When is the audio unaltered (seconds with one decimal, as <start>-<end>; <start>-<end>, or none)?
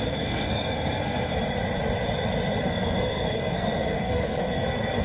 1.3-2.6